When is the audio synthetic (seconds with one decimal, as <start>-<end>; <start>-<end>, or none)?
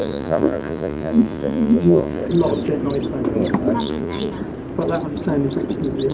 0.0-2.2; 3.8-4.3